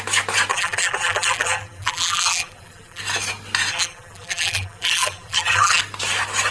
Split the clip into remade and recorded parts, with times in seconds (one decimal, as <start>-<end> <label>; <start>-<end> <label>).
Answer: 0.0-0.5 recorded; 0.5-3.0 remade; 3.0-3.7 recorded; 3.7-5.8 remade; 5.8-6.5 recorded